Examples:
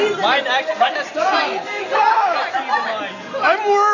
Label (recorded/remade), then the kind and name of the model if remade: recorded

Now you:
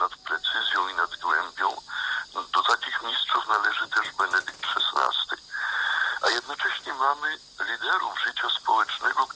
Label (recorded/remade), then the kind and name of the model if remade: recorded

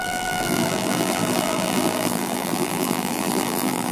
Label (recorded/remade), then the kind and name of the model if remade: remade, vocoder, BigVGAN v2